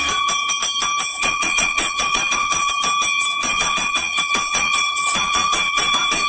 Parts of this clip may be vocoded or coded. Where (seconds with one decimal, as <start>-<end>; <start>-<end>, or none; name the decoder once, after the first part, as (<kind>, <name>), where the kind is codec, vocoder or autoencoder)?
1.1-2.7 (vocoder, Vocos); 3.5-6.3